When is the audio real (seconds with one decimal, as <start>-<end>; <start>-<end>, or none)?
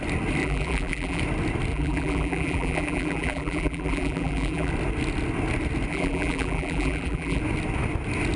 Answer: 0.0-0.4; 1.2-1.7; 4.7-5.9; 7.4-8.4